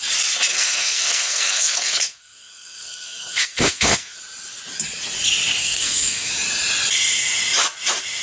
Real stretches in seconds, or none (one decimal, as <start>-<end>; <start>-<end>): 0.0-0.5; 4.2-5.6; 6.3-8.2